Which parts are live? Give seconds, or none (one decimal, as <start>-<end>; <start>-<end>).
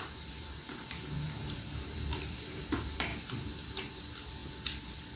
3.1-4.0; 4.4-5.2